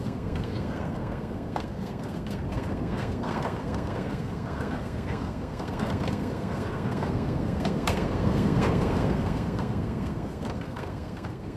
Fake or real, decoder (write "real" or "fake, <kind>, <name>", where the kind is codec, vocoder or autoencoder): fake, codec, SNAC